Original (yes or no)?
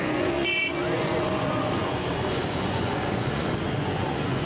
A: no